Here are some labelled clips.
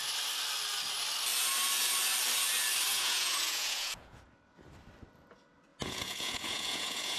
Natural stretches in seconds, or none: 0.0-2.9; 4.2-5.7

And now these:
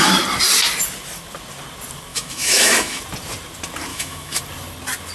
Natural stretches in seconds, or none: 0.0-2.1; 3.0-3.9; 4.4-5.1